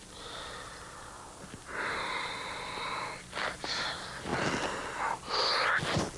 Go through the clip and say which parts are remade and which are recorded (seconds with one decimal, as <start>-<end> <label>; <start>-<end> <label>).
0.0-6.2 recorded